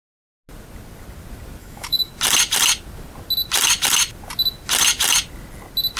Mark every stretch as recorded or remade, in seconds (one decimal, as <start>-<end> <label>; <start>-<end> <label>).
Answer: 0.0-1.6 recorded; 1.6-2.1 remade; 2.1-6.0 recorded